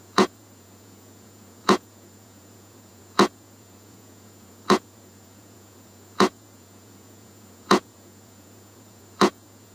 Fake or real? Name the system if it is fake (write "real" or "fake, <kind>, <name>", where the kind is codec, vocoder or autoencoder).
fake, vocoder, Vocos